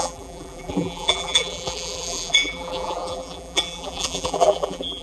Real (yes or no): no